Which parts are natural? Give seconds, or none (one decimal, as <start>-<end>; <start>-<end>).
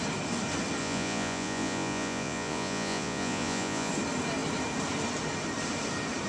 0.0-0.8; 3.9-6.3